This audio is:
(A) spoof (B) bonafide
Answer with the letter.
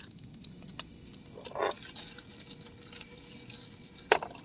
B